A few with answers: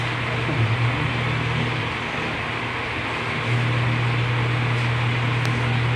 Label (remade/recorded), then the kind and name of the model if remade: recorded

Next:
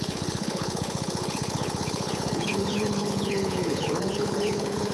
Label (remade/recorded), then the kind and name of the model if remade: remade, codec, HILCodec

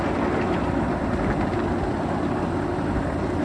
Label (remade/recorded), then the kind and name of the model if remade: recorded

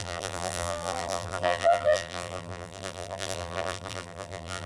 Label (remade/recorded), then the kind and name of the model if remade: remade, vocoder, BigVGAN v2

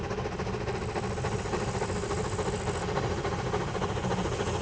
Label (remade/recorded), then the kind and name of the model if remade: recorded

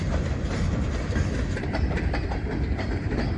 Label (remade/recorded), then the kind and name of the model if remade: recorded